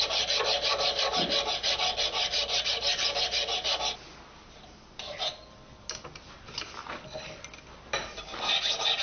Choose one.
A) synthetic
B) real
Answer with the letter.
B